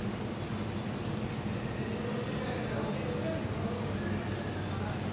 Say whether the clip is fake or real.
real